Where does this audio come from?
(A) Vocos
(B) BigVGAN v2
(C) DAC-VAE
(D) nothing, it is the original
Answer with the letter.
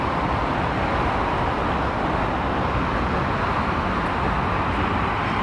D